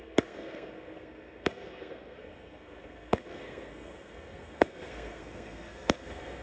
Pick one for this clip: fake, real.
fake